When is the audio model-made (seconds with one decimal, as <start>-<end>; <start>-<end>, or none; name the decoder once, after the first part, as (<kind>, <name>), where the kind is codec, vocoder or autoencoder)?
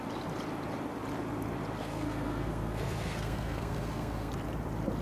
1.8-4.3 (codec, SNAC)